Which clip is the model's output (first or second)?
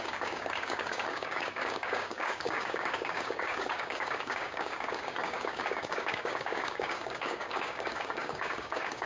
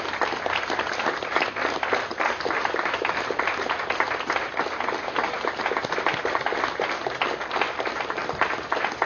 first